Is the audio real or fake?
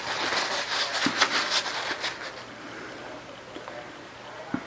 real